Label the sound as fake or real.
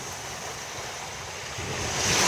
real